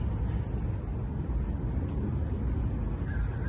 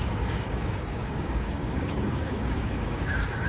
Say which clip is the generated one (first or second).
second